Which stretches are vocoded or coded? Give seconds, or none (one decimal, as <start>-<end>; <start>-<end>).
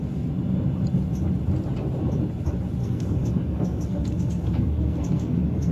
2.8-5.7